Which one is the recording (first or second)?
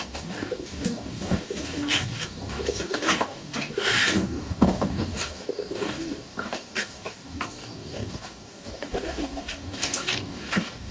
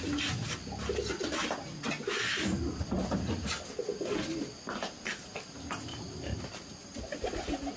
second